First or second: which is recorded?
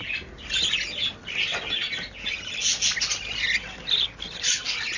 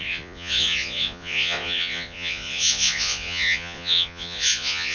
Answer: first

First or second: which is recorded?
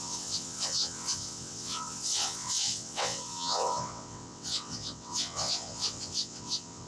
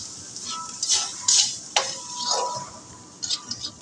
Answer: second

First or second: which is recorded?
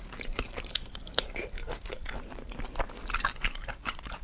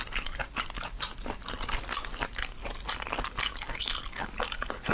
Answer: second